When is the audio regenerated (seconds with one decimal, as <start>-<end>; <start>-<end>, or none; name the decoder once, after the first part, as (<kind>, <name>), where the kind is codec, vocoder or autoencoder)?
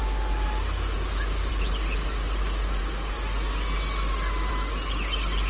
none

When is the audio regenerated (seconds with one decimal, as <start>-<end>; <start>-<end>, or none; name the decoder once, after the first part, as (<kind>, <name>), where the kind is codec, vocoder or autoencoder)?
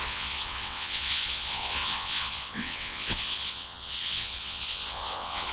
0.0-5.5 (vocoder, WaveNeXt)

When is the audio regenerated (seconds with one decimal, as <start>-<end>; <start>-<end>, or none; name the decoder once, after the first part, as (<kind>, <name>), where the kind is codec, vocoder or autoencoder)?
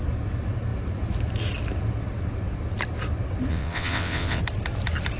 3.5-4.4 (vocoder, WaveNeXt)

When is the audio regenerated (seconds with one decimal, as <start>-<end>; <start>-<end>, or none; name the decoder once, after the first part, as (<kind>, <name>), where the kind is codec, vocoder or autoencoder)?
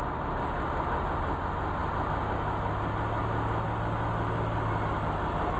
none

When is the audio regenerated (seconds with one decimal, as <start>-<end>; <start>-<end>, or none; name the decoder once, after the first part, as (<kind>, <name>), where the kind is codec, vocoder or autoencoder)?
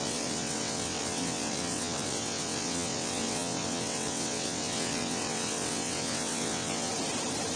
0.0-6.9 (vocoder, WaveNeXt)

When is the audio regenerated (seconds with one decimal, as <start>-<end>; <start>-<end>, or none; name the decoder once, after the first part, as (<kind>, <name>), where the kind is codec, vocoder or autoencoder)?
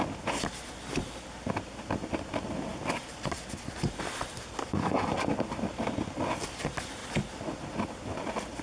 none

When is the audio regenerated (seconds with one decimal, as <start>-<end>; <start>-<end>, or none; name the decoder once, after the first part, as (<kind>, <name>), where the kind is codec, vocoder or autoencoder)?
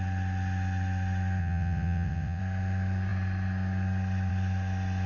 1.4-2.4 (vocoder, WaveNeXt)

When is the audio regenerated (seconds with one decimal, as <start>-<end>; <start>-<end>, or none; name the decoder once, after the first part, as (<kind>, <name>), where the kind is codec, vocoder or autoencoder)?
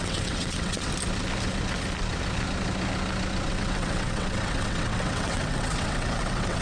0.0-0.9 (vocoder, WaveNeXt); 3.5-6.6